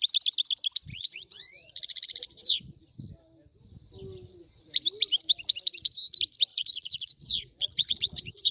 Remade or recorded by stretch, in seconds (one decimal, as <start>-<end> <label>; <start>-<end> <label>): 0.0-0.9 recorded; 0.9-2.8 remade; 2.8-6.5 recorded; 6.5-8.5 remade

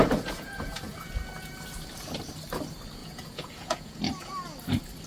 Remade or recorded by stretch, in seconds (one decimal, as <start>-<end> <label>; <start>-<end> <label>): 0.0-1.1 remade; 1.1-3.0 recorded; 3.0-4.0 remade; 4.0-5.1 recorded

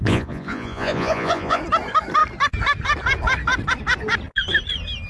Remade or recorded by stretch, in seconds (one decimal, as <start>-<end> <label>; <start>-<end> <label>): 0.0-1.6 remade; 1.6-5.1 recorded